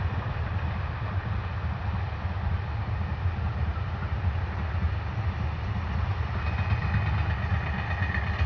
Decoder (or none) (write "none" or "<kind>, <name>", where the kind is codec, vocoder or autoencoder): none